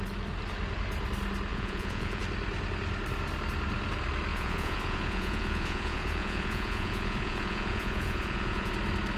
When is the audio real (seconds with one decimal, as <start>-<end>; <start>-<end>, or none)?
0.0-1.5; 2.2-4.3; 8.7-9.2